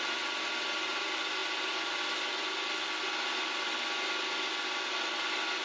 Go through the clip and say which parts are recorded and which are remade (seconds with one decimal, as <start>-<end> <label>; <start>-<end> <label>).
0.0-5.6 recorded